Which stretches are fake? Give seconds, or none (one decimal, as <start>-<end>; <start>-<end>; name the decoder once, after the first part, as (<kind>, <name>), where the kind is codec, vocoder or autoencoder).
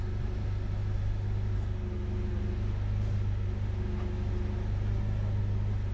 none